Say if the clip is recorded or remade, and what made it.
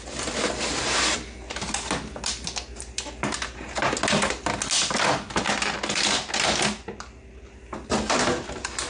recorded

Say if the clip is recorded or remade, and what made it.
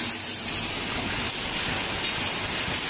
recorded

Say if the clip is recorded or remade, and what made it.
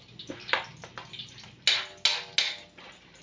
recorded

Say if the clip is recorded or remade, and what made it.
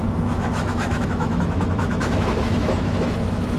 remade, autoencoder, DAC-VAE